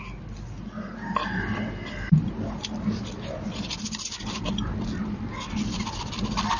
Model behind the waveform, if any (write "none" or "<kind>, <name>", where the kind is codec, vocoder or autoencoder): none